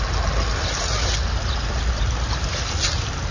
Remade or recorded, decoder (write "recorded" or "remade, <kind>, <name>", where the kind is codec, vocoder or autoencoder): recorded